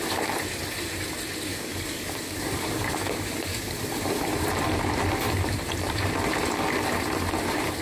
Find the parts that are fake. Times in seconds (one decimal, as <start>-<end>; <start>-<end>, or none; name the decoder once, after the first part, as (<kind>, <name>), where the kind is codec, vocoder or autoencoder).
1.5-4.2 (codec, DAC)